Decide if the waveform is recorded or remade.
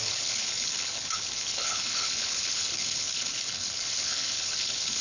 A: remade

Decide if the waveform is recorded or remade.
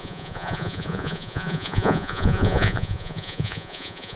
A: remade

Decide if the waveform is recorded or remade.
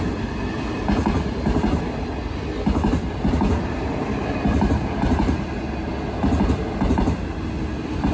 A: recorded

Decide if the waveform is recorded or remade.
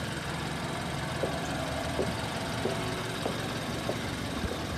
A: remade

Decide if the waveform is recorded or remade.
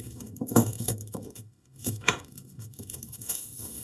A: remade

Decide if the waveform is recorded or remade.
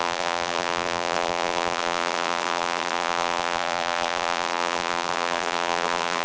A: remade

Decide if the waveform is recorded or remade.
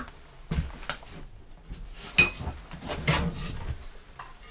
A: recorded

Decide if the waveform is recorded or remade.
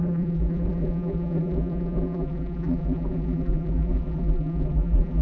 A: remade